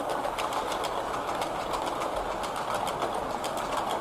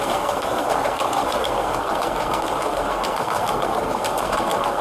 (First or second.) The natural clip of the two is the first